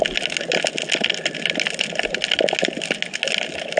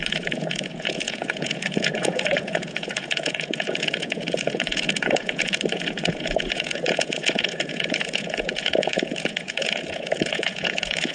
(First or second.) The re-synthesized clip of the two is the second